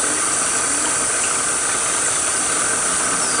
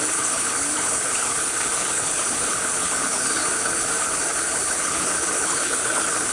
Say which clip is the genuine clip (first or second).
first